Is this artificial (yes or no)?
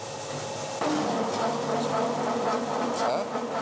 no